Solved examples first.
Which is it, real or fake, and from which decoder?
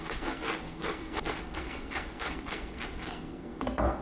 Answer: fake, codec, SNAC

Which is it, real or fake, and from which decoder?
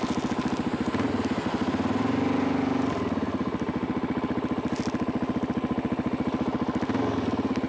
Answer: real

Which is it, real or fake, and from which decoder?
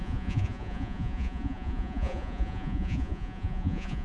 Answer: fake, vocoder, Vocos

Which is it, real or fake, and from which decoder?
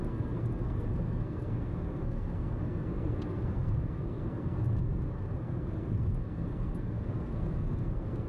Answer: fake, codec, SNAC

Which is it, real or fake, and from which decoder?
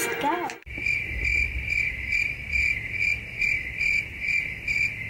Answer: real